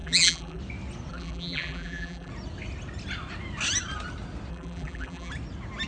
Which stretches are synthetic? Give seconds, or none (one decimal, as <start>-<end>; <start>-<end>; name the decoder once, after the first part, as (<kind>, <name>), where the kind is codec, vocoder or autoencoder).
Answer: 0.0-0.6 (vocoder, BigVGAN v2); 1.1-2.3; 4.5-5.3